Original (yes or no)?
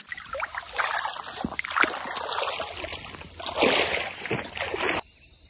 yes